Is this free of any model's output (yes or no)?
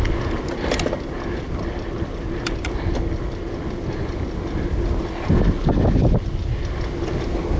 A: yes